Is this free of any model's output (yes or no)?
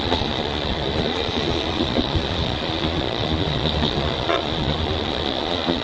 no